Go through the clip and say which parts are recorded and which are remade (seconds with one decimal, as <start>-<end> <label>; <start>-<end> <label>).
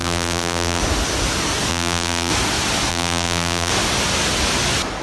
0.0-0.8 remade; 0.8-1.7 recorded; 1.7-2.3 remade; 2.3-2.9 recorded; 2.9-3.7 remade; 3.7-5.0 recorded